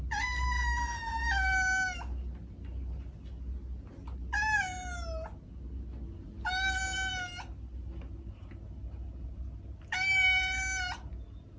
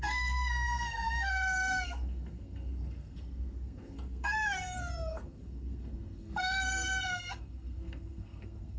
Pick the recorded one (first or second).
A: first